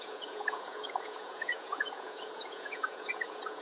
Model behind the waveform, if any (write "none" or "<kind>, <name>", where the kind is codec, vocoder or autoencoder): vocoder, Vocos